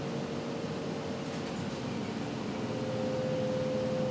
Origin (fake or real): real